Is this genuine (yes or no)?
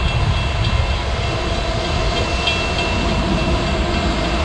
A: yes